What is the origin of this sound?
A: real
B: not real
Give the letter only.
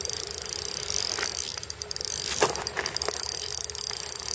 A